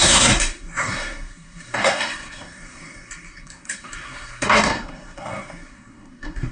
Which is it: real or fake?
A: fake